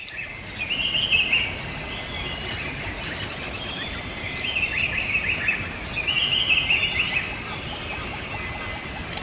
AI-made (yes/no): no